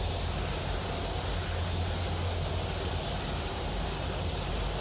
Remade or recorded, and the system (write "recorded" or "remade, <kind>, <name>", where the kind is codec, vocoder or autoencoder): recorded